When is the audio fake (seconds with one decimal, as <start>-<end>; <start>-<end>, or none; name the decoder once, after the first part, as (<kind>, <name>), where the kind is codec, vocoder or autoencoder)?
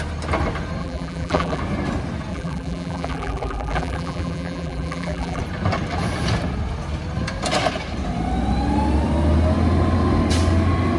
0.8-1.6 (vocoder, BigVGAN v2); 2.3-5.4